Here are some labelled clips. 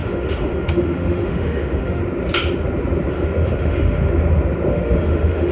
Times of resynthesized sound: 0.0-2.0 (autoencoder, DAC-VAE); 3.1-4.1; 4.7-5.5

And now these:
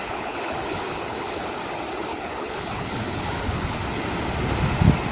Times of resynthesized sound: 0.0-1.5 (codec, HILCodec); 2.1-3.8

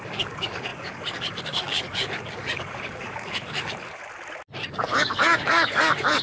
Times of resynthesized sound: 0.0-4.0 (codec, DAC); 4.7-6.2

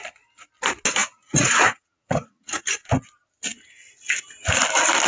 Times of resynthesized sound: 1.0-2.6 (vocoder, Vocos)

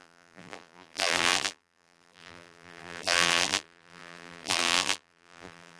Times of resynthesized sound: 0.0-5.8 (vocoder, BigVGAN v2)

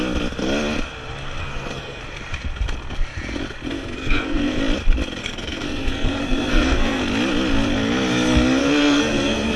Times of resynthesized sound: 1.4-2.0 (codec, SNAC); 3.7-4.6; 5.2-7.0; 8.6-9.6